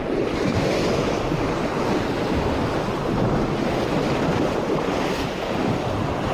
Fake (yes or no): no